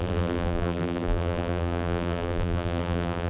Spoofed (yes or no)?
yes